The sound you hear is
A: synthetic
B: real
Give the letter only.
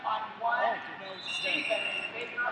B